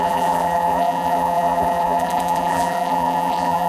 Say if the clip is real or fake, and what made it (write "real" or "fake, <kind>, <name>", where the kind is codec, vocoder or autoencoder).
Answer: fake, vocoder, BigVGAN v2